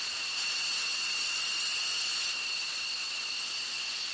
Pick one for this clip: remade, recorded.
recorded